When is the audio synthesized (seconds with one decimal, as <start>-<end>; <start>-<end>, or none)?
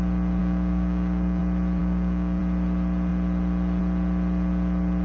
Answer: 0.4-1.4; 1.8-2.4